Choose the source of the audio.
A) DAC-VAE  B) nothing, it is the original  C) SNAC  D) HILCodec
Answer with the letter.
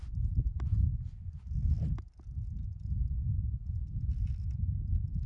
B